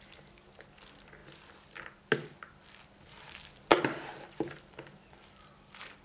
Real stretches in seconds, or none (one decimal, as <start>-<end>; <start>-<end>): 0.0-3.7; 5.4-6.0